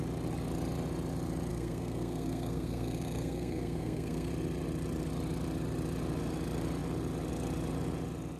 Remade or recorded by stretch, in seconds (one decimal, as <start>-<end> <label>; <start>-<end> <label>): 0.0-1.5 recorded; 1.5-4.3 remade; 4.3-8.4 recorded